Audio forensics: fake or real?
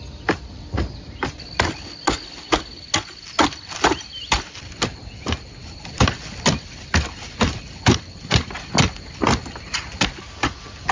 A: real